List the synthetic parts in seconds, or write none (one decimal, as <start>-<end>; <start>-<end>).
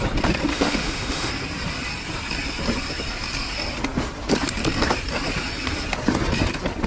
0.5-1.3